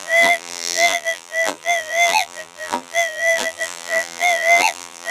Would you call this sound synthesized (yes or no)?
yes